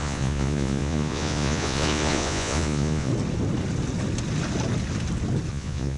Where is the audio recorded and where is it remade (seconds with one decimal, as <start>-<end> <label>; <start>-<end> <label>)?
0.0-3.1 remade; 3.1-5.5 recorded; 5.5-6.0 remade

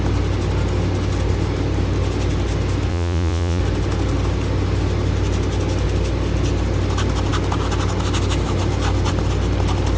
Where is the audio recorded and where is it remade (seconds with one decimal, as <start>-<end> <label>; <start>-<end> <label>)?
0.0-2.9 recorded; 2.9-3.6 remade; 3.6-10.0 recorded

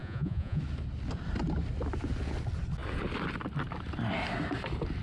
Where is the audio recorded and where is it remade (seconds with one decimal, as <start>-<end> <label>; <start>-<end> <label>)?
0.0-0.6 remade; 0.6-5.0 recorded